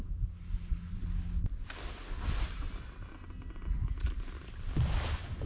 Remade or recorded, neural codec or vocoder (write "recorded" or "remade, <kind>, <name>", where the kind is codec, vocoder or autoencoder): recorded